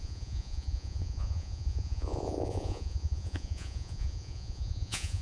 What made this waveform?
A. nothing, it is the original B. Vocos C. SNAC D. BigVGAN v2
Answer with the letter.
B